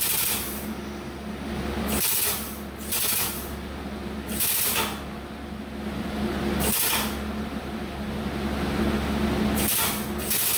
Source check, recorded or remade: recorded